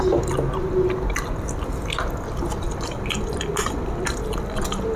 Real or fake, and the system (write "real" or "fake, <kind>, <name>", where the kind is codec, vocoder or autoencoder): real